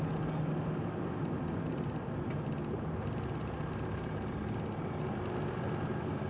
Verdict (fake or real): real